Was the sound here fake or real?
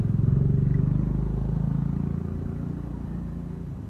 real